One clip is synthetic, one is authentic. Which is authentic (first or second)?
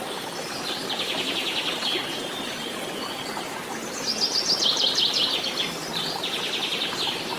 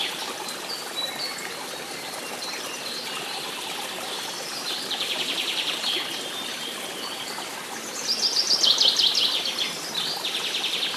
first